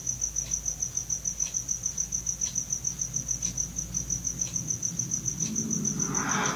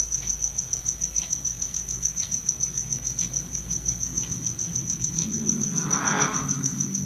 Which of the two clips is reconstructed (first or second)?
second